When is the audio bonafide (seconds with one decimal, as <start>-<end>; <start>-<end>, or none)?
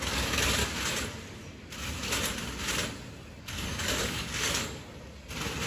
0.6-3.4; 4.8-5.7